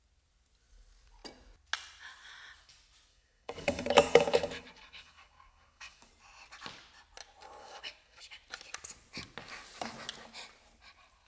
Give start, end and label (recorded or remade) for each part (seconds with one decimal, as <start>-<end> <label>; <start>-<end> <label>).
0.0-3.1 recorded; 3.1-6.1 remade; 6.1-7.6 recorded; 7.6-8.2 remade; 8.2-11.3 recorded